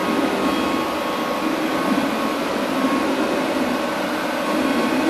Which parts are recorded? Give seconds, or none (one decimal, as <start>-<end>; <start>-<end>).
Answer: 0.0-5.1